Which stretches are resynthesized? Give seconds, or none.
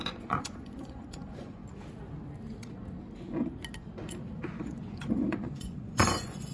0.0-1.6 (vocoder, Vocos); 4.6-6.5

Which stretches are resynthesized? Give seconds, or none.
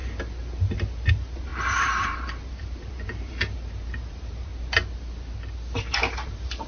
1.1-4.5 (vocoder, BigVGAN v2); 6.0-6.7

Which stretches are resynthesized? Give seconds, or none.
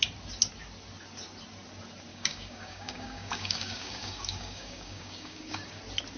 2.1-5.8 (codec, DAC)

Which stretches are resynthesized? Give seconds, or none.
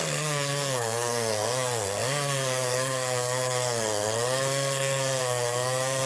0.0-6.1 (codec, SNAC)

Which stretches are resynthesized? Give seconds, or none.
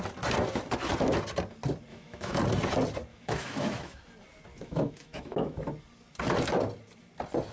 1.9-2.4 (autoencoder, DAC-VAE); 3.1-4.1; 4.5-5.6